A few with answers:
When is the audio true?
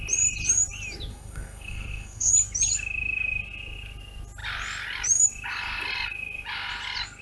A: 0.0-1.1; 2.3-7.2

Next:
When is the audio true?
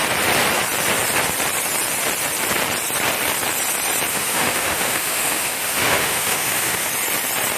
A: 0.0-4.1; 6.9-7.6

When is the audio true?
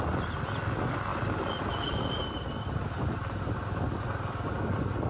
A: 0.0-5.1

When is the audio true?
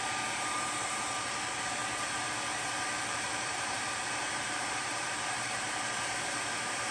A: 1.8-3.0